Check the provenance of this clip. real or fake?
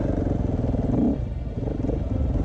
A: real